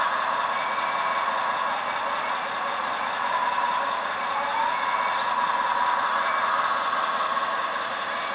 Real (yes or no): no